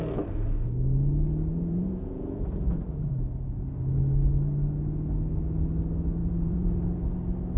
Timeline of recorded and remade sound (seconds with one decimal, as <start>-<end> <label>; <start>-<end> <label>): 0.0-1.5 recorded; 1.5-3.5 remade; 3.5-6.2 recorded; 6.2-6.8 remade; 6.8-7.6 recorded